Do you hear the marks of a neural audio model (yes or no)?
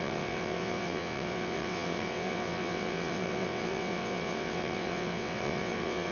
yes